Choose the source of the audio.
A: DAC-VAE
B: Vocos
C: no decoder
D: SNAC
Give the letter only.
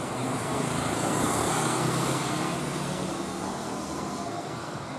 D